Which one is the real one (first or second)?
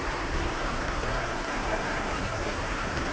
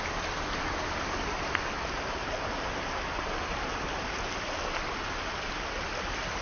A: second